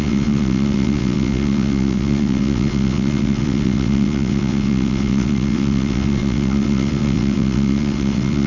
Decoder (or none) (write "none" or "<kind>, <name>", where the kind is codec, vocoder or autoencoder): vocoder, WaveNeXt